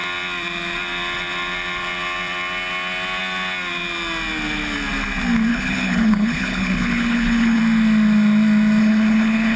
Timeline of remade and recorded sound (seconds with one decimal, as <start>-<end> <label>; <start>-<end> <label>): 0.0-5.5 recorded; 5.5-7.6 remade; 7.6-8.8 recorded; 8.8-9.6 remade